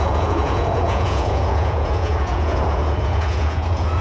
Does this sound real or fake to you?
fake